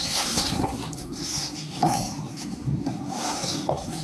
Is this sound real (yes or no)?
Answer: no